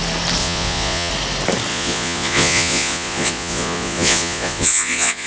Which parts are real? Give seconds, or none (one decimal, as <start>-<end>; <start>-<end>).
0.0-0.4; 1.1-1.7